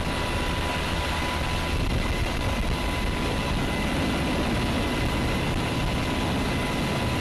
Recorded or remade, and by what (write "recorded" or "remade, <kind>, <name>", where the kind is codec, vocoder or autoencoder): recorded